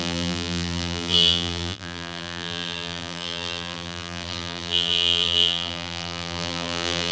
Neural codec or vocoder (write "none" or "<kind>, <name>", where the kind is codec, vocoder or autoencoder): vocoder, BigVGAN v2